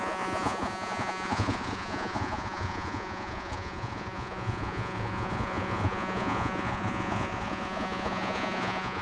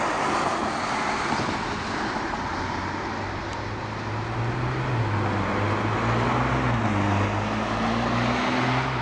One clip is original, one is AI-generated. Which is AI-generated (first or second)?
first